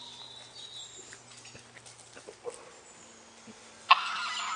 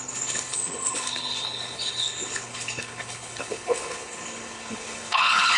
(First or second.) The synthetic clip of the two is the second